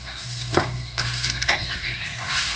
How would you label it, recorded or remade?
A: remade